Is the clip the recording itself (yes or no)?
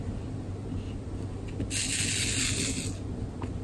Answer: yes